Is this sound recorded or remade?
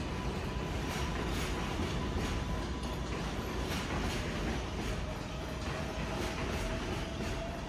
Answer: recorded